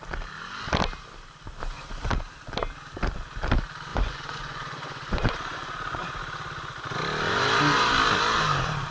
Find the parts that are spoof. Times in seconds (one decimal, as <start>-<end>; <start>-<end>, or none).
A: 1.6-2.1; 3.9-6.2